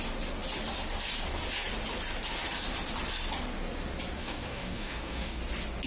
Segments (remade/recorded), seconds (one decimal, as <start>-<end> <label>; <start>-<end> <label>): 0.0-4.2 recorded; 4.2-5.4 remade; 5.4-5.9 recorded